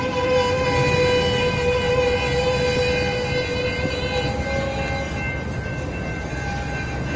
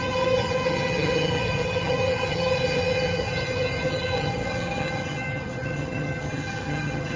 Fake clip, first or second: second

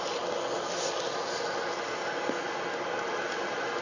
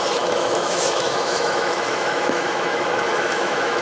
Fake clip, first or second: second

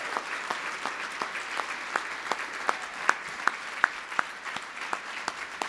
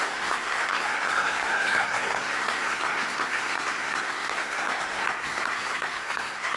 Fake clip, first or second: second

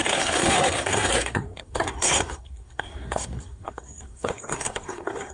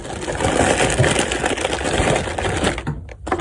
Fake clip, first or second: first